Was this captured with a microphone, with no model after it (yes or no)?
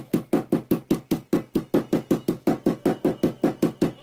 yes